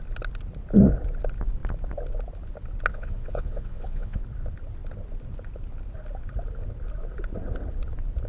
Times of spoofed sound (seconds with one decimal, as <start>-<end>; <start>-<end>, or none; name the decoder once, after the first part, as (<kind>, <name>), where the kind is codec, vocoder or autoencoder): 2.9-4.2 (vocoder, WaveNeXt)